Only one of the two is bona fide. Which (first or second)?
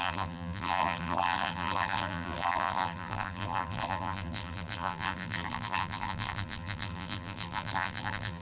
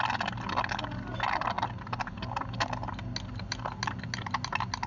second